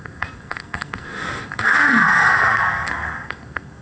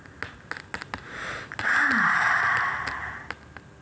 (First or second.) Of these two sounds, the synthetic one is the first